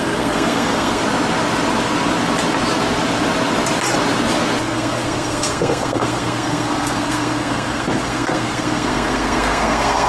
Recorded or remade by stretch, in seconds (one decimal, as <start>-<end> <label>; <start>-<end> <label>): 0.0-1.0 remade; 1.0-4.6 recorded; 4.6-10.1 remade